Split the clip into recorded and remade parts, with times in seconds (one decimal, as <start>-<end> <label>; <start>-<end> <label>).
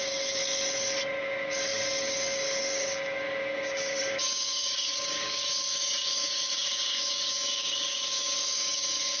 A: 0.0-0.4 remade; 0.4-1.2 recorded; 1.2-9.2 remade